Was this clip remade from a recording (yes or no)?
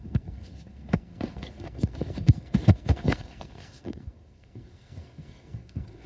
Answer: yes